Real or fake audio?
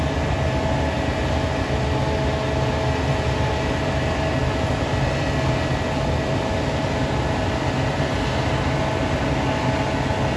real